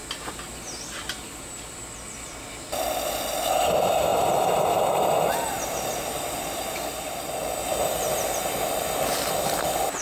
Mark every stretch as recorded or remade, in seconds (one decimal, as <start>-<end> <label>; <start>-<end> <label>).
0.0-10.0 recorded